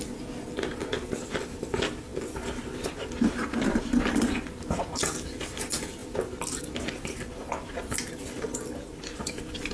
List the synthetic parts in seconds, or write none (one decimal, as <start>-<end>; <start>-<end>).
none